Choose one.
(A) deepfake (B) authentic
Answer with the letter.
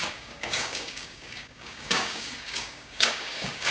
A